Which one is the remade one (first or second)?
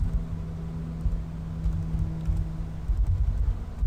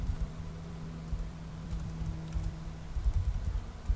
second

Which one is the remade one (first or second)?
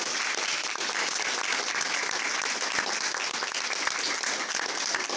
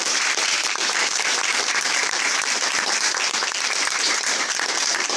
second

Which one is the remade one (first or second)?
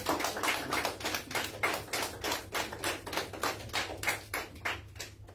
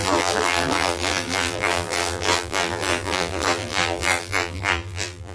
second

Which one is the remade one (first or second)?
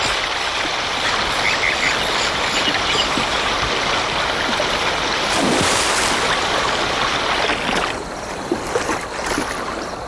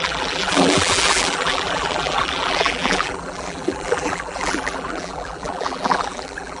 second